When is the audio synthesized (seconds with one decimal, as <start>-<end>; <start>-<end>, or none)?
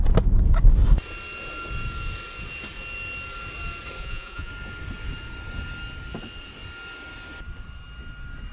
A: 4.0-4.5